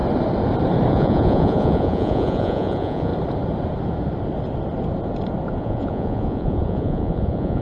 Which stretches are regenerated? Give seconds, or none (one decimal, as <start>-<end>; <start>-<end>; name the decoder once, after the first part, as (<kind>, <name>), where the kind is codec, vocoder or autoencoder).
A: 0.9-3.1 (vocoder, Vocos); 5.6-7.6